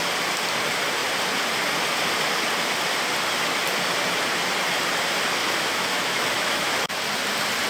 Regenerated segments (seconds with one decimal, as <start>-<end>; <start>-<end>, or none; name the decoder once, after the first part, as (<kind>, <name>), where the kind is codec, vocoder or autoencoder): 5.4-6.9 (autoencoder, DAC-VAE)